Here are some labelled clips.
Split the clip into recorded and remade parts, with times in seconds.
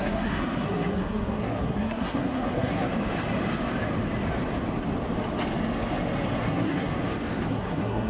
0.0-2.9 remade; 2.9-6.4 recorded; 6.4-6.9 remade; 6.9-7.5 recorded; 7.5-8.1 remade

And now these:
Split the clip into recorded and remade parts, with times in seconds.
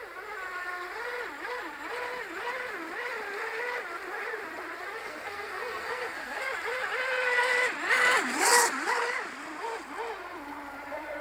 0.0-5.0 recorded; 5.0-6.4 remade; 6.4-11.2 recorded